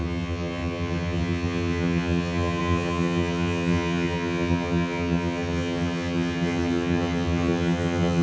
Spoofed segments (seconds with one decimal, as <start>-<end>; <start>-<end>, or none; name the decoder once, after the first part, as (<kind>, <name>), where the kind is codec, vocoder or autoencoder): 0.0-8.2 (vocoder, HiFi-GAN)